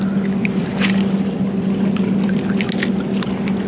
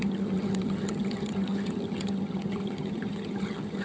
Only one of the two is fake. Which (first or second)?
second